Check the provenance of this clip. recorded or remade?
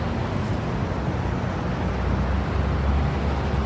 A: recorded